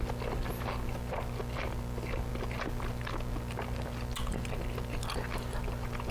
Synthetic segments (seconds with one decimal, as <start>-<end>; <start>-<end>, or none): none

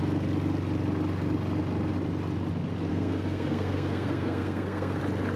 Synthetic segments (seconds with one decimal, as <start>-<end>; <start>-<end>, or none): 2.9-5.0

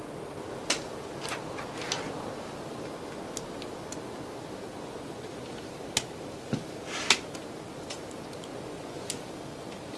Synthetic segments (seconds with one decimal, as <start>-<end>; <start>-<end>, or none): 4.7-5.4; 8.5-9.1

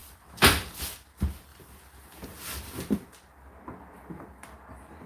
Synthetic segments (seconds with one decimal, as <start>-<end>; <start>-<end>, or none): 0.0-0.7

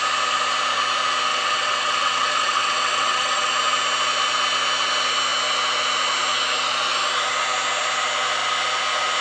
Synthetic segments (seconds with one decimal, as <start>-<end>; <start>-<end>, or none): 1.3-3.5

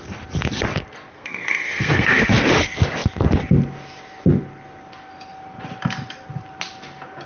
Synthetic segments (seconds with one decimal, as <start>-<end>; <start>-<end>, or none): 1.1-2.2